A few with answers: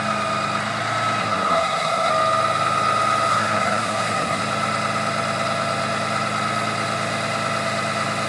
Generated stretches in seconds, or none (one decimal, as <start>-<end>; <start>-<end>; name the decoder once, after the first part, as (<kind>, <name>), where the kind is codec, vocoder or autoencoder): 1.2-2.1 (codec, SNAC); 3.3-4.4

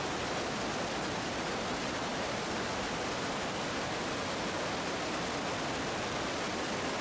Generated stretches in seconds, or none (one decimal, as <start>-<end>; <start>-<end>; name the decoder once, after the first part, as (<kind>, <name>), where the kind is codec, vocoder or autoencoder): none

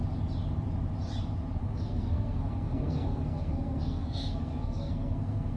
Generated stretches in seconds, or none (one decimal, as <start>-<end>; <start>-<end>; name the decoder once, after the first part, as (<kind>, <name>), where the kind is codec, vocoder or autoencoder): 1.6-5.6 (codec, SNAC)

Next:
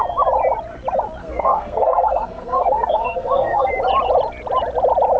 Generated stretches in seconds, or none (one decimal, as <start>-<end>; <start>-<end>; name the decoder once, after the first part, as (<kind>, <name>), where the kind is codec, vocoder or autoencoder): 1.2-3.7 (codec, SNAC)

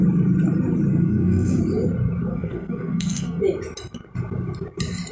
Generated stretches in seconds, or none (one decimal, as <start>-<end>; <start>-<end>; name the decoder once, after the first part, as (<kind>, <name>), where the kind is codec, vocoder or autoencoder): 0.9-1.6 (codec, SNAC); 2.3-3.4